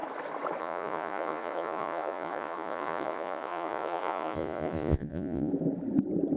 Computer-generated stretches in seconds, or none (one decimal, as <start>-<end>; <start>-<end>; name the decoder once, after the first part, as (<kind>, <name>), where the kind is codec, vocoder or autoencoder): 0.6-5.5 (vocoder, Vocos)